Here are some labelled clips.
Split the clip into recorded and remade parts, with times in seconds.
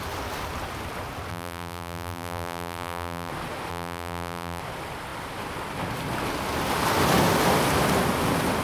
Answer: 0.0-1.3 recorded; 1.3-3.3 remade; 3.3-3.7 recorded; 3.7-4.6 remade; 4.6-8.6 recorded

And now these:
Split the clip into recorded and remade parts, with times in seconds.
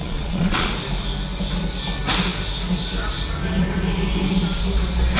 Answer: 0.0-0.7 remade; 0.7-5.2 recorded